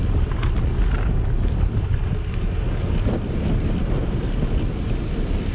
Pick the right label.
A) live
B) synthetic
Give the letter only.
A